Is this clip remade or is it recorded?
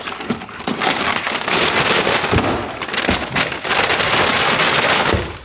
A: recorded